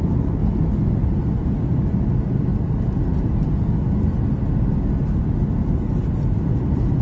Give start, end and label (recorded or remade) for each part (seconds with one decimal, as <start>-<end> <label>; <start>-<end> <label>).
0.0-7.0 recorded